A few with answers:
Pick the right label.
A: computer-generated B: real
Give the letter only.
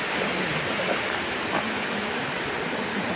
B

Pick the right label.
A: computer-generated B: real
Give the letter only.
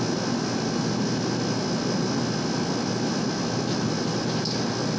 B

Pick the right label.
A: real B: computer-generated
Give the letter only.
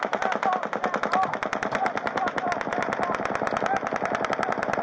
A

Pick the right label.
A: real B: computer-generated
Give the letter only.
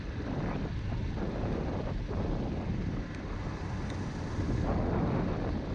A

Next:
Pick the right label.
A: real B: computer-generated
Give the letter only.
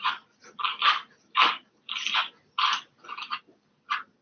A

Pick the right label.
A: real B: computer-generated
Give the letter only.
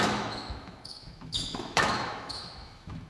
B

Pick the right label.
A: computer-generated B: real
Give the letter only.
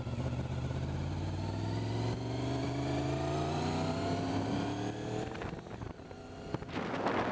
B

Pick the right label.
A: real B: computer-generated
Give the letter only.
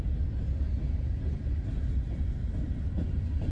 A